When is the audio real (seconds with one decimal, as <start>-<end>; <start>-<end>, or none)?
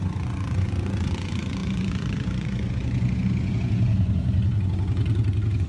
none